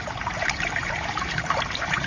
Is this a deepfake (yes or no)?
yes